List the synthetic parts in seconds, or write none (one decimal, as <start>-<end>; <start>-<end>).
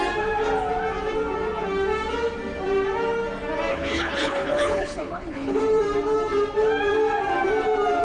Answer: 3.7-5.6